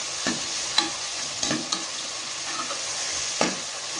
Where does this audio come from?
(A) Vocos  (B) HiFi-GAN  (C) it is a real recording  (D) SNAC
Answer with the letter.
A